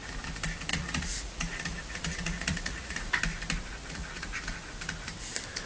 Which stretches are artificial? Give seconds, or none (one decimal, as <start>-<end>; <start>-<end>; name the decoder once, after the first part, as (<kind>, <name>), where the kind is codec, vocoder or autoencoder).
0.7-3.1 (vocoder, Vocos); 3.7-4.5